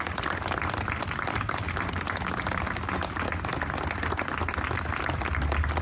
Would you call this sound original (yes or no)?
yes